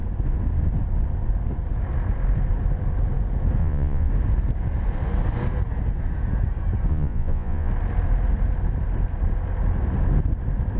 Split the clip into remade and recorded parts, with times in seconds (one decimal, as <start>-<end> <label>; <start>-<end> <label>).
0.0-3.6 recorded; 3.6-4.1 remade; 4.1-6.9 recorded; 6.9-7.7 remade; 7.7-10.8 recorded